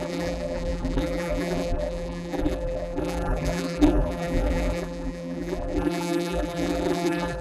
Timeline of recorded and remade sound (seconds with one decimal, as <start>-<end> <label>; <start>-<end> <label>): 0.0-7.4 remade